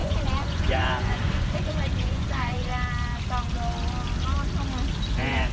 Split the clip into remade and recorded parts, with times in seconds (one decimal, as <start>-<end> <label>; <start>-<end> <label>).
0.0-2.7 remade; 2.7-5.1 recorded; 5.1-5.5 remade